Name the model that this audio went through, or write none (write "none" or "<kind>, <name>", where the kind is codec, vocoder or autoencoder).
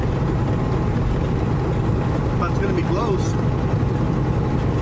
none